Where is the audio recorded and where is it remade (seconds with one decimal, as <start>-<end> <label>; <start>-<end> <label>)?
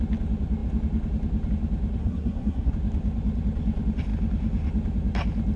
0.0-2.0 recorded; 2.0-2.7 remade; 2.7-5.6 recorded